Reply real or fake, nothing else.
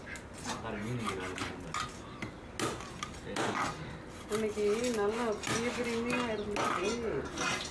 real